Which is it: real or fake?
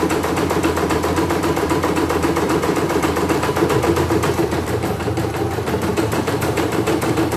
fake